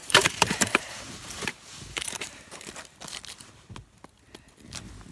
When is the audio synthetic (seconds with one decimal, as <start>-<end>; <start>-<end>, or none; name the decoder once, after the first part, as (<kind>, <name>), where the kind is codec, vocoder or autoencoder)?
0.0-2.4 (vocoder, BigVGAN v2)